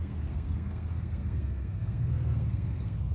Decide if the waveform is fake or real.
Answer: fake